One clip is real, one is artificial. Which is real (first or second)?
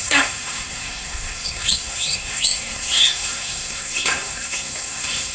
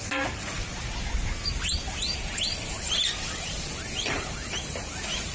second